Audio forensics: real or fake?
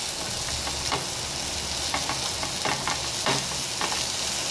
real